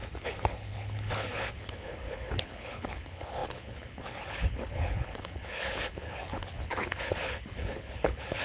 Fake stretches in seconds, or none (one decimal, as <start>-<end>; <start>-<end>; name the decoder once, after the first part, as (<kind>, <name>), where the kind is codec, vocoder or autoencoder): 0.0-8.4 (codec, HILCodec)